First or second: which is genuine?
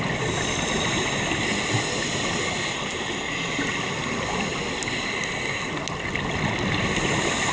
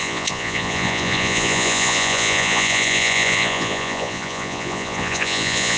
first